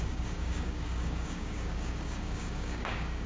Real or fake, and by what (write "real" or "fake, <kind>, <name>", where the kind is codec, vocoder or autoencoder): fake, codec, DAC